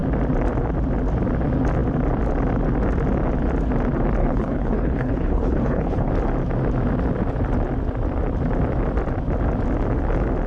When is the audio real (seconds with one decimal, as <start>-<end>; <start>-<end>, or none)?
0.0-4.2; 6.1-10.5